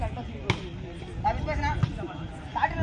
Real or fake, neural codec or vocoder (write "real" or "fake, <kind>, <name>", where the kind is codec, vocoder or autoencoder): real